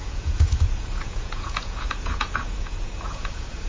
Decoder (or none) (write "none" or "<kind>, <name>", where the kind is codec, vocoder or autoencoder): vocoder, Vocos